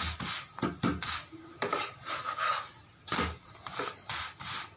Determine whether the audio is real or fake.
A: real